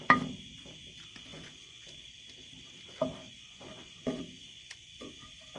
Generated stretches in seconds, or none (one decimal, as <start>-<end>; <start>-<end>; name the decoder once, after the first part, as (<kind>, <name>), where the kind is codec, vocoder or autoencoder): 1.3-2.1 (vocoder, Vocos); 3.2-5.1